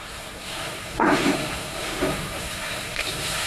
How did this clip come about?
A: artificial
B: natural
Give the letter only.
A